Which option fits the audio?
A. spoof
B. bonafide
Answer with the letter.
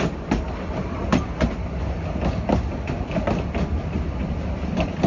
B